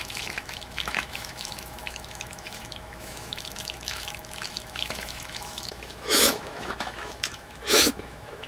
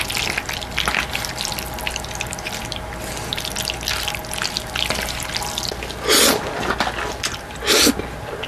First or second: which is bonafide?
second